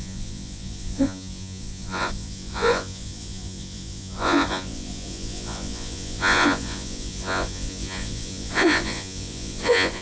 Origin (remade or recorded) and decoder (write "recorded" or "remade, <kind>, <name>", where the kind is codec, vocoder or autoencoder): remade, vocoder, Vocos